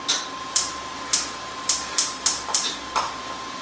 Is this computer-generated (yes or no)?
yes